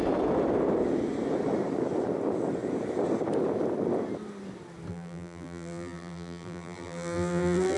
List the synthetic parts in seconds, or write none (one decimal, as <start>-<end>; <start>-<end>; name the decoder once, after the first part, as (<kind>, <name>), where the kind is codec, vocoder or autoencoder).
4.9-7.8 (vocoder, BigVGAN v2)